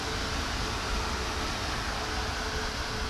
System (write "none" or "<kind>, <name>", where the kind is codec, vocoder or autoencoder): none